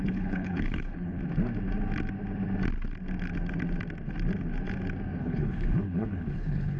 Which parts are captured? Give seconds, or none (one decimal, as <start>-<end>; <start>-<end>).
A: 1.2-5.2